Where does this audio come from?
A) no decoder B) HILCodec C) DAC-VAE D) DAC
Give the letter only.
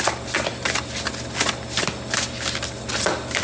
A